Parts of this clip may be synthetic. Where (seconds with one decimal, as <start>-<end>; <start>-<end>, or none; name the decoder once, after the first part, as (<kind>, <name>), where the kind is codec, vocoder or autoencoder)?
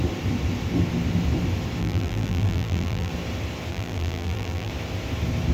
1.8-3.1 (vocoder, BigVGAN v2); 3.7-4.7